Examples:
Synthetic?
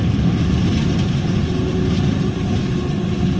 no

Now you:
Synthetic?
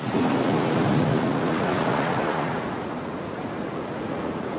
yes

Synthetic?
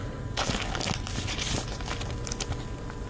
no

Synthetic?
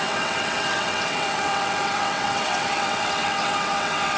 yes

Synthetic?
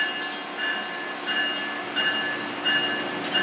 no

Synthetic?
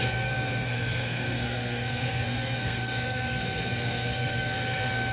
yes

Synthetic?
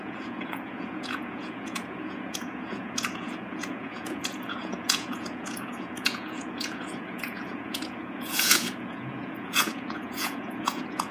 yes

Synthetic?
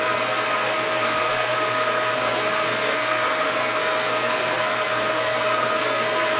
yes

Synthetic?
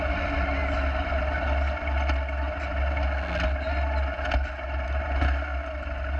no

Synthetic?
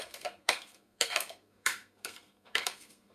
yes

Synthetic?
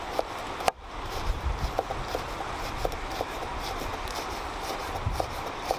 no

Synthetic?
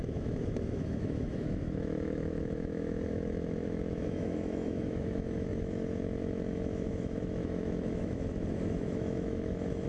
yes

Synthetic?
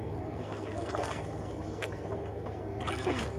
yes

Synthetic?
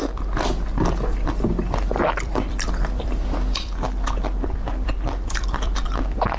yes